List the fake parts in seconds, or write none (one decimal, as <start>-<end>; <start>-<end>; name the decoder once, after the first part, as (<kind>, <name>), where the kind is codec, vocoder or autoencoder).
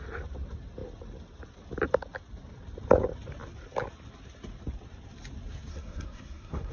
5.7-6.7 (codec, SNAC)